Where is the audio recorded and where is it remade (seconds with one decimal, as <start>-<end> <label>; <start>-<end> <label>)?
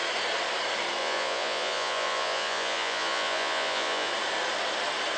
0.0-1.0 recorded; 1.0-4.1 remade; 4.1-5.2 recorded